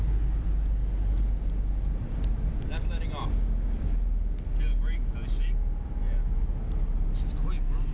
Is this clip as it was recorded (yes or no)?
yes